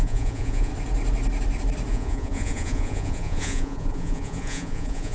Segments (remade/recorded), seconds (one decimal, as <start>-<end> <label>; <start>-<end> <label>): 0.0-0.7 remade; 0.7-1.9 recorded; 1.9-5.1 remade